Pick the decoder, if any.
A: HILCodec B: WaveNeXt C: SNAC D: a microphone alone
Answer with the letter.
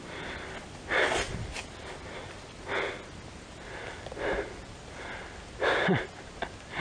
D